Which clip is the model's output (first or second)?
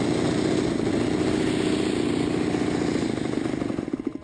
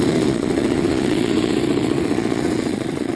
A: second